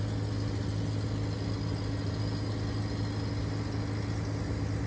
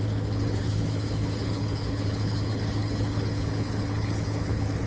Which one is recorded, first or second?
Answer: first